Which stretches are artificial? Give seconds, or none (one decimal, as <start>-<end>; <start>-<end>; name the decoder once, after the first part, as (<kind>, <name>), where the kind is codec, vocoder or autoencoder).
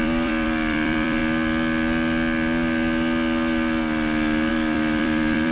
0.0-1.2 (vocoder, BigVGAN v2); 4.5-5.5